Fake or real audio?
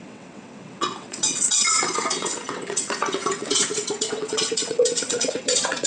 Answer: fake